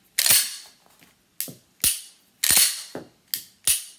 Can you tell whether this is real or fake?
real